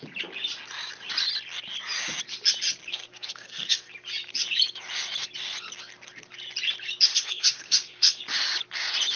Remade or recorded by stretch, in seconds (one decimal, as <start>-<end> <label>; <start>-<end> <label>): 0.0-2.9 recorded; 2.9-3.9 remade; 3.9-7.1 recorded; 7.1-8.2 remade; 8.2-9.2 recorded